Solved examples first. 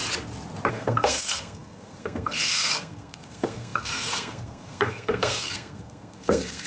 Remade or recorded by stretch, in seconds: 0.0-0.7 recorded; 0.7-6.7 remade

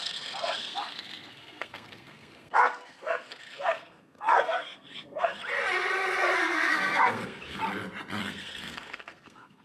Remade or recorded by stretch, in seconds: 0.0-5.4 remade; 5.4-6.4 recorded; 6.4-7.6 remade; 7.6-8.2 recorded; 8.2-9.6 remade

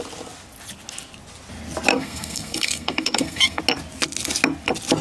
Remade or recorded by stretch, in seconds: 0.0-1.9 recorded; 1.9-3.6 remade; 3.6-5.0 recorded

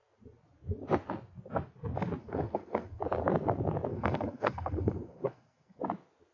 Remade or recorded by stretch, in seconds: 0.0-2.2 recorded; 2.2-3.0 remade; 3.0-3.9 recorded; 3.9-5.8 remade; 5.8-6.3 recorded